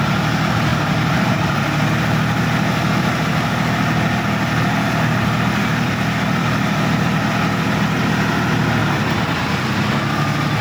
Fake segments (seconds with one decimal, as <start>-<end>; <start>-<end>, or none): 0.7-1.3; 5.7-8.1